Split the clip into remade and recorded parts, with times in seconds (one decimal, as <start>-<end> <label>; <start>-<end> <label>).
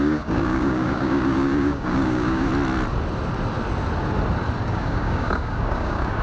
0.0-2.5 remade; 2.5-4.7 recorded; 4.7-6.2 remade